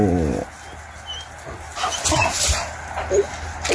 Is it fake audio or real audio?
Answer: real